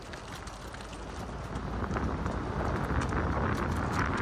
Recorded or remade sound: recorded